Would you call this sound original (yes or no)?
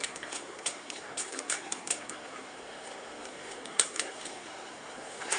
no